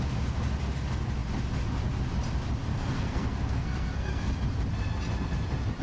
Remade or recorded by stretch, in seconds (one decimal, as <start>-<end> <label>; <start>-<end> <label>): 0.0-2.7 recorded; 2.7-4.3 remade; 4.3-5.8 recorded